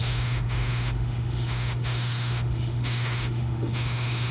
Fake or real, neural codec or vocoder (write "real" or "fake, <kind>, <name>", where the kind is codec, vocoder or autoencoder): fake, autoencoder, DAC-VAE